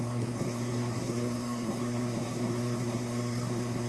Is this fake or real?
fake